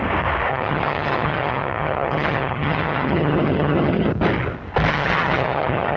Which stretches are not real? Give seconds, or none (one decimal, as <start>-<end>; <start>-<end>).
0.5-4.1; 4.9-6.0